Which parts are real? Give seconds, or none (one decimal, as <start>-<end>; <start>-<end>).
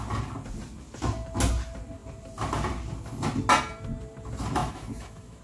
0.0-4.6